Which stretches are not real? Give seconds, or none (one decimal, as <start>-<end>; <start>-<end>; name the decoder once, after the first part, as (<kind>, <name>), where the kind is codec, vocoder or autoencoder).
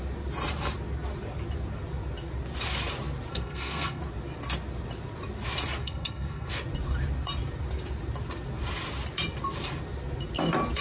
3.3-4.0 (codec, SNAC); 5.8-6.5